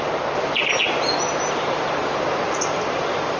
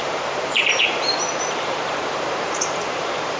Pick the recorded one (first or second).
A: first